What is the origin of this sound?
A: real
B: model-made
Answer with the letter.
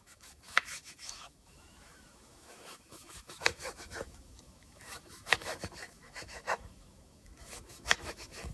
B